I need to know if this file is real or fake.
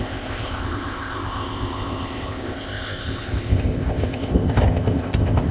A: fake